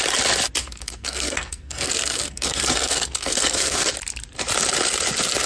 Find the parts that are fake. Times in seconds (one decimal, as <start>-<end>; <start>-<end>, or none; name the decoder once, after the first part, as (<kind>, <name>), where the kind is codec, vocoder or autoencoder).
0.6-3.9 (codec, SNAC)